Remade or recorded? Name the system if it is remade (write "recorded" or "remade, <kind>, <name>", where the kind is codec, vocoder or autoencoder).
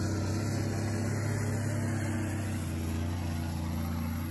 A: recorded